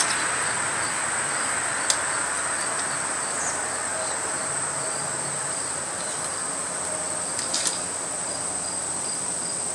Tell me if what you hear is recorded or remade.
recorded